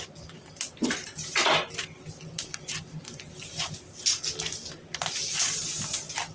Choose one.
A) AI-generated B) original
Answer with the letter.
B